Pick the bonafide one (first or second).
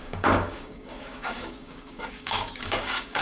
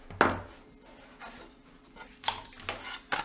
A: second